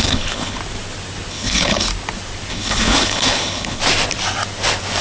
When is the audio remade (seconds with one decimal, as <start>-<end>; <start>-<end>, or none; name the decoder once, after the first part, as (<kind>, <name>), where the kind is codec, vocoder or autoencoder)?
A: 0.0-0.6 (codec, HILCodec); 1.3-1.9; 2.5-3.8